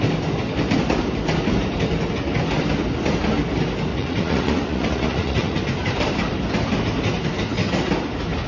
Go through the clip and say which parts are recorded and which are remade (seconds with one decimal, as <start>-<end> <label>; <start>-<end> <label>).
0.0-3.9 recorded; 3.9-5.6 remade; 5.6-8.5 recorded